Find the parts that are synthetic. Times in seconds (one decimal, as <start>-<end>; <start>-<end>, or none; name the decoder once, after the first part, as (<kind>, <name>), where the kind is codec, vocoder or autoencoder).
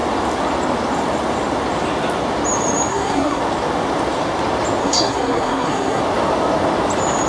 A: 2.9-3.4 (codec, SNAC); 4.8-6.0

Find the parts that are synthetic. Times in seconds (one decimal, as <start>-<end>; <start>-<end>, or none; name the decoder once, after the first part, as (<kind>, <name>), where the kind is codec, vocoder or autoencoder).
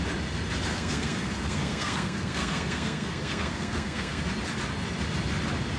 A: 0.7-4.2 (codec, SNAC)